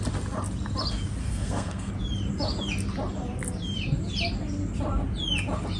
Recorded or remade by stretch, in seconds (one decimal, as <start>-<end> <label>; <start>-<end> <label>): 0.0-1.2 recorded; 1.2-1.9 remade; 1.9-5.8 recorded